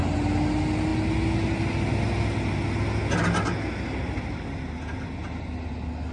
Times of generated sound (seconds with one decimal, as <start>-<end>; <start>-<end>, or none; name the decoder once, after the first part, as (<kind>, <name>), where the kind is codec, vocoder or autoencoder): none